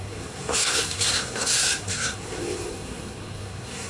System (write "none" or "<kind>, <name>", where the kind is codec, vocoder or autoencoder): codec, SNAC